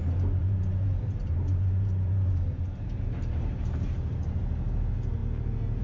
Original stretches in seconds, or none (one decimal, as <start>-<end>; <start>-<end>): 0.0-0.4; 3.9-5.8